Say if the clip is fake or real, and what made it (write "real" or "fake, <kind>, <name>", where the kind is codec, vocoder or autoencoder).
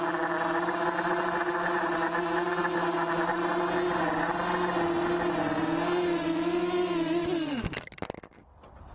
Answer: real